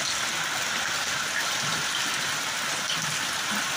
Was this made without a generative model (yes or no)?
yes